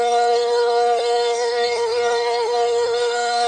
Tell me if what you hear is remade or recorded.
remade